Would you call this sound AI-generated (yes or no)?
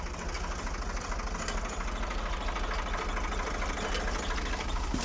no